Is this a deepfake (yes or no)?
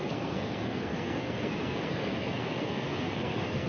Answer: yes